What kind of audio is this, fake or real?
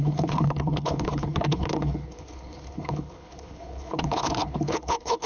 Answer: fake